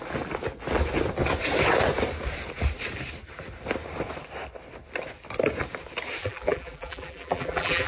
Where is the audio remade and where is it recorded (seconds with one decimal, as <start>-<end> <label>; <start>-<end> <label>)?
0.0-6.2 recorded; 6.2-7.9 remade